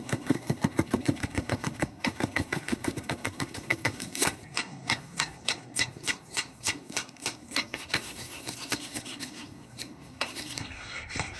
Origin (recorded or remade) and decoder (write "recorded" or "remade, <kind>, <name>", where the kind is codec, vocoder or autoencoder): remade, codec, SNAC